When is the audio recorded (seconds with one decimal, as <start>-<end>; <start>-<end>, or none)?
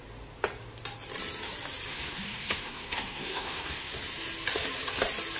0.0-1.9; 3.9-5.4